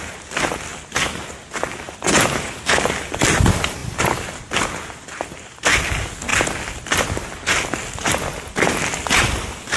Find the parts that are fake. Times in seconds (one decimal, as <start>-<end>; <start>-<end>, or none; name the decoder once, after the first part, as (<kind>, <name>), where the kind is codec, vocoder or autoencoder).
none